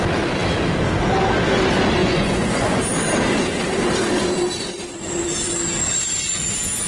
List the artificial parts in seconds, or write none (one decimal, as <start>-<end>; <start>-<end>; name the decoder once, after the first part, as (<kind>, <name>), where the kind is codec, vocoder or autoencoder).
2.0-2.8 (vocoder, Vocos)